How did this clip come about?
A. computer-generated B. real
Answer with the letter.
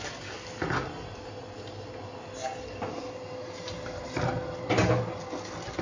B